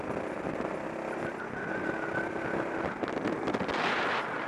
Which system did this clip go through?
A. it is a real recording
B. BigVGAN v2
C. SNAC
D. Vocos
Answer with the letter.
A